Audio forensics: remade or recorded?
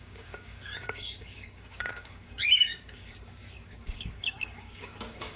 remade